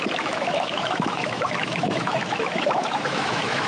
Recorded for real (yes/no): no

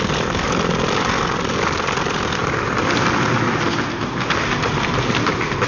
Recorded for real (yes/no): yes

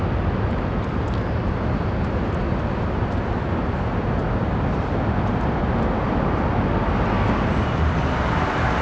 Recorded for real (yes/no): yes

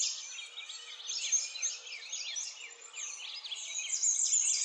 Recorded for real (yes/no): yes